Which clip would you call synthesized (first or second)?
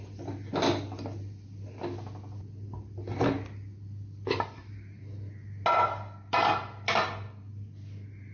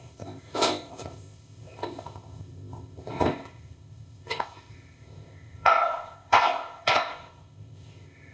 second